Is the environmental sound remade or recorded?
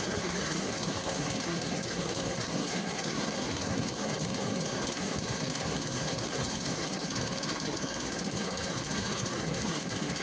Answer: remade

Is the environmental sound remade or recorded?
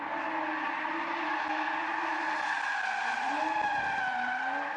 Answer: recorded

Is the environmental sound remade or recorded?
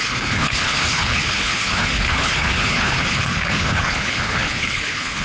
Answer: remade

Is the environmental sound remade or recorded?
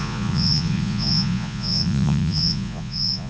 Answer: remade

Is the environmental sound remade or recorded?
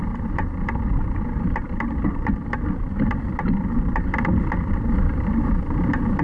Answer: recorded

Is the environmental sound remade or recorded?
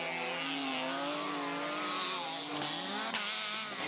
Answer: recorded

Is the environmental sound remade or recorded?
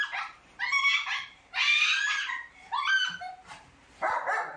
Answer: recorded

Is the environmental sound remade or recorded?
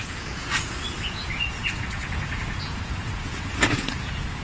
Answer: remade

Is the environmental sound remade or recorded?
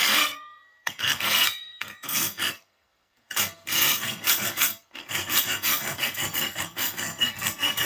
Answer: remade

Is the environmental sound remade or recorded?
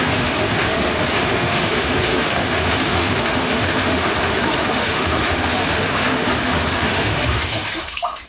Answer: remade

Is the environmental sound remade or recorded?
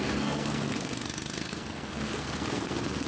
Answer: remade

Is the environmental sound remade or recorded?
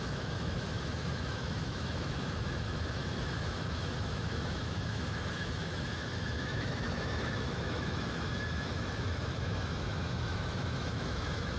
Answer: remade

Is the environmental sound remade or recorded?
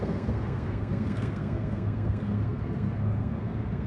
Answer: remade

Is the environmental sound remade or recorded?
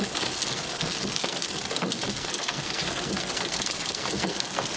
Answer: remade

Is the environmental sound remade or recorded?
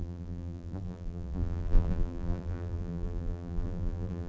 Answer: remade